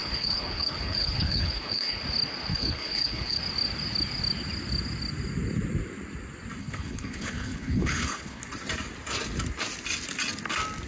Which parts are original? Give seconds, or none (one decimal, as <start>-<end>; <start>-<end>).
2.0-2.5; 3.4-6.6; 8.4-10.9